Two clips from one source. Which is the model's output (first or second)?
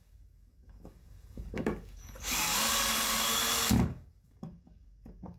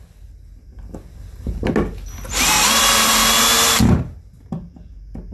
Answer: first